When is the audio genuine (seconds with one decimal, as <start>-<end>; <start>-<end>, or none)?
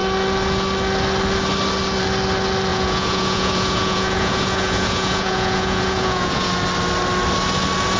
0.0-2.7; 6.5-8.0